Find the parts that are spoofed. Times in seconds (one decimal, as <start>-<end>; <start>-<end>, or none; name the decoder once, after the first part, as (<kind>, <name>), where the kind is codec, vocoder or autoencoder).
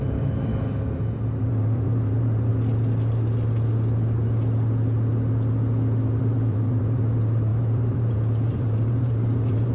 0.0-0.5 (vocoder, BigVGAN v2); 1.4-2.5; 6.2-9.7